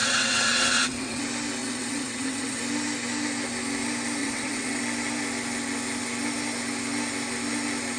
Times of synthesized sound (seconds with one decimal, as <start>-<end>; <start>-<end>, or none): 0.0-1.2; 1.6-2.6; 4.2-4.8